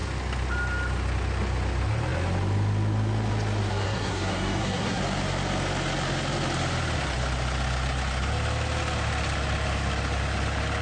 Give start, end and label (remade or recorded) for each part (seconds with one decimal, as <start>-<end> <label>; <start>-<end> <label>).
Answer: 0.0-3.7 recorded; 3.7-5.0 remade; 5.0-10.8 recorded